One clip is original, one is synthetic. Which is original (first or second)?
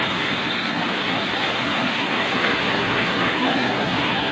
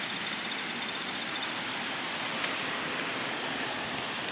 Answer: second